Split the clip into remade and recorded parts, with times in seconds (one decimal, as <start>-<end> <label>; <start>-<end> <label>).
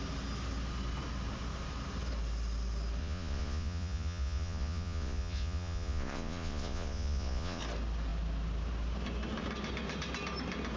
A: 0.0-3.0 recorded; 3.0-7.6 remade; 7.6-10.8 recorded